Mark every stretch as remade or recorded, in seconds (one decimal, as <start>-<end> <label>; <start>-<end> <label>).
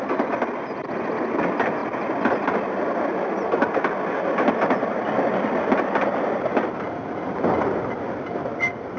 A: 0.0-9.0 recorded